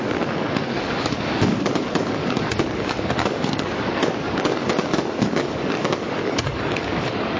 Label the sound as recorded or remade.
remade